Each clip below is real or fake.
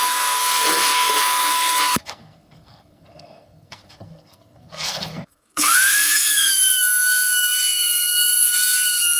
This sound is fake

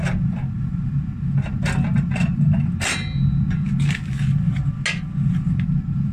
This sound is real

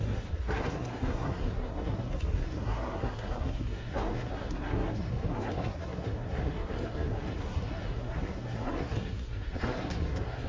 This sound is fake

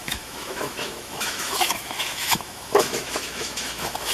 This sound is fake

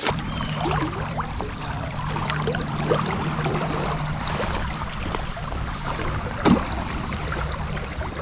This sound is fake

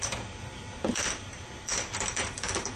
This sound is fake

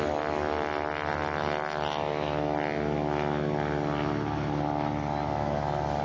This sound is real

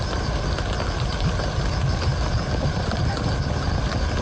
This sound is real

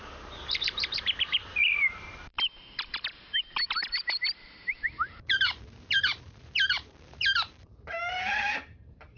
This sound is fake